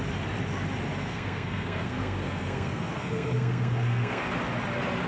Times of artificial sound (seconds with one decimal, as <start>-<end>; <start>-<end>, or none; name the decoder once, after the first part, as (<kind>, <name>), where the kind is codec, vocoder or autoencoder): 1.1-4.2 (codec, SNAC)